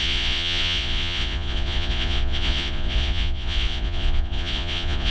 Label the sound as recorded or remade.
remade